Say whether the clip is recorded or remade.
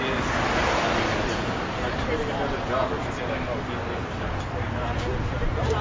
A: recorded